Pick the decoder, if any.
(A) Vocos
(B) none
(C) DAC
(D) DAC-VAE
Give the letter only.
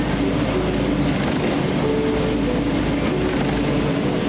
B